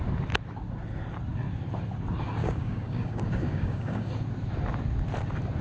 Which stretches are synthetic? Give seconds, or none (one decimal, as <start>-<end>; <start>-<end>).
2.4-4.1